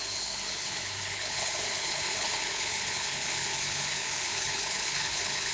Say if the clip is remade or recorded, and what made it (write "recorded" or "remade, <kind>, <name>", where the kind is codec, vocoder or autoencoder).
remade, codec, HILCodec